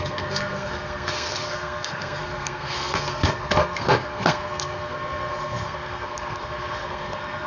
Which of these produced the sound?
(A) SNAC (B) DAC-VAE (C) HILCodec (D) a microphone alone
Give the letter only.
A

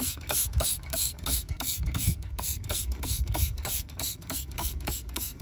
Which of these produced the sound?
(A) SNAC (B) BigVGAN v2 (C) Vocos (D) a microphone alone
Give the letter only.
A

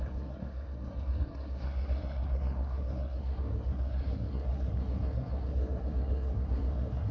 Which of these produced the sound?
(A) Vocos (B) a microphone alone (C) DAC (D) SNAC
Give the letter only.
D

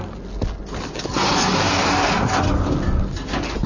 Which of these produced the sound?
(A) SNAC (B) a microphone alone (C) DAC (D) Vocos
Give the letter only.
B